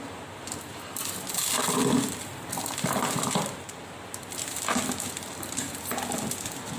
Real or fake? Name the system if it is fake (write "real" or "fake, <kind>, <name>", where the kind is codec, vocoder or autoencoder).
real